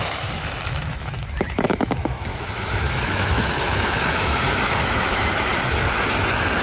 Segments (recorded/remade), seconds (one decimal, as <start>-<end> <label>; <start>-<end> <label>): 0.0-5.5 remade; 5.5-6.6 recorded